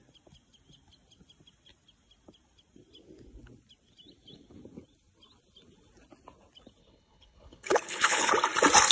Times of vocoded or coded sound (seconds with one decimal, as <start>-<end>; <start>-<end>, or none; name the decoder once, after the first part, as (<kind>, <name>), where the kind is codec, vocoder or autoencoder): 6.8-8.3 (codec, HILCodec)